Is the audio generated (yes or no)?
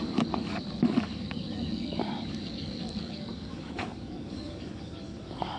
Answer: yes